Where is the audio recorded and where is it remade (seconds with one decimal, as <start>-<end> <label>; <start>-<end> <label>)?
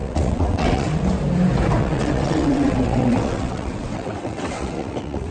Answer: 0.0-1.0 remade; 1.0-1.8 recorded; 1.8-5.3 remade